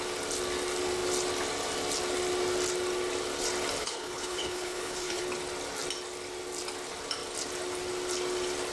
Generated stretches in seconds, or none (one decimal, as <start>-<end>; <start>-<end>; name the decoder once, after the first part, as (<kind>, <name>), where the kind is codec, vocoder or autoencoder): 3.8-5.2 (codec, HILCodec)